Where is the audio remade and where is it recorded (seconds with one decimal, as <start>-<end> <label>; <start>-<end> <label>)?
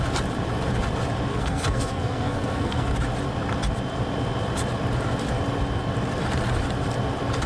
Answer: 0.0-1.3 recorded; 1.3-2.9 remade; 2.9-7.5 recorded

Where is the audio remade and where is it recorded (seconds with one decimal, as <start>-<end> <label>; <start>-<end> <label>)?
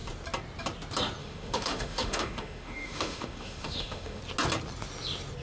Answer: 0.0-1.2 recorded; 1.2-4.2 remade; 4.2-5.4 recorded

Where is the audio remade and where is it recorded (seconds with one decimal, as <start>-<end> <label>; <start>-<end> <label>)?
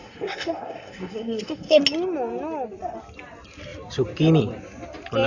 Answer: 0.0-1.8 remade; 1.8-5.3 recorded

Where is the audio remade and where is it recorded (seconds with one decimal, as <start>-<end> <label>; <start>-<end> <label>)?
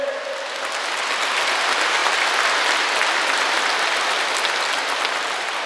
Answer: 0.0-5.7 recorded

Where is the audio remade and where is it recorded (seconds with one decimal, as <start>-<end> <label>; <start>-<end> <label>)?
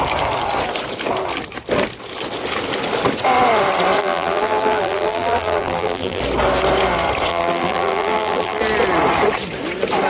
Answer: 0.0-4.0 recorded; 4.0-6.2 remade; 6.2-7.3 recorded; 7.3-8.6 remade; 8.6-10.1 recorded